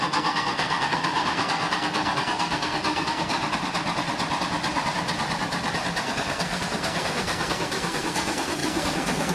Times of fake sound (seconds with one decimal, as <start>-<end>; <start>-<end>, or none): 0.0-3.3; 6.0-9.3